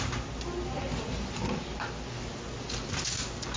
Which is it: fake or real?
real